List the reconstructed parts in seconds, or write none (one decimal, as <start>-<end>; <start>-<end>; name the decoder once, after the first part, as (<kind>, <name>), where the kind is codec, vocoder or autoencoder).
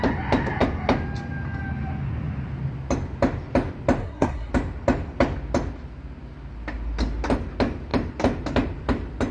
4.0-4.5 (codec, SNAC)